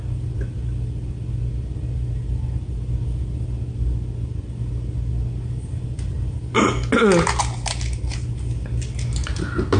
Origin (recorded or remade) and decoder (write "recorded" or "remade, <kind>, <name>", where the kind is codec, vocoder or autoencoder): recorded